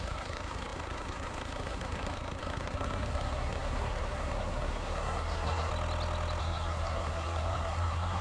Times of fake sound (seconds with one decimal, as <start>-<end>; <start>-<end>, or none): 0.0-5.7; 6.4-8.2